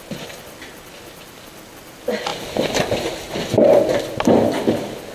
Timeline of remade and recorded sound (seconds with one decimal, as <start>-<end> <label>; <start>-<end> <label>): 0.0-5.1 recorded